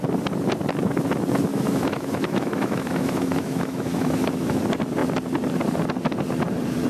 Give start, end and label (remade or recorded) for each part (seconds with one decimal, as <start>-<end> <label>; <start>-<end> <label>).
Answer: 0.0-1.5 recorded; 1.5-4.6 remade; 4.6-6.9 recorded